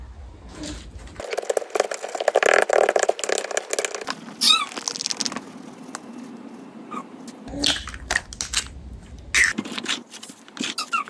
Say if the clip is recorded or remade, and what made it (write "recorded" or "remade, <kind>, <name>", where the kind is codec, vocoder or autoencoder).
recorded